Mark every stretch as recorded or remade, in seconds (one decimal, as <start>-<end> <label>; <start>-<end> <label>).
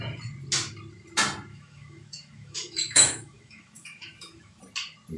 0.0-1.5 recorded; 1.5-4.6 remade; 4.6-5.2 recorded